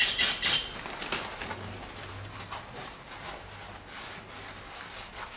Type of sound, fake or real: real